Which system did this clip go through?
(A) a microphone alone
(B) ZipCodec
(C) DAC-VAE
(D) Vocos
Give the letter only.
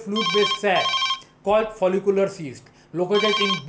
A